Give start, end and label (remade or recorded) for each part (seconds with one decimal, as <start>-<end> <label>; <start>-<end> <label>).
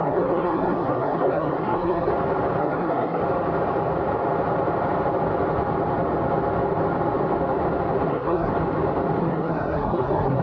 0.0-2.1 remade; 2.1-2.6 recorded; 2.6-3.2 remade; 3.2-8.1 recorded; 8.1-8.5 remade; 8.5-9.2 recorded; 9.2-10.4 remade